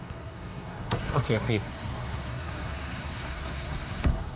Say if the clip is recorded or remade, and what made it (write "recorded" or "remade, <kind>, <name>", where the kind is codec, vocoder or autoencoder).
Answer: remade, codec, SNAC